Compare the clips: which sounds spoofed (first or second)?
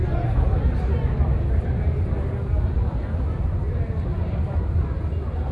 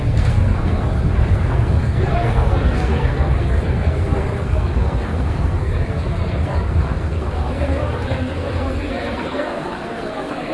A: second